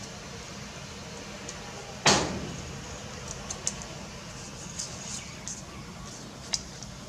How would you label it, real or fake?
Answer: real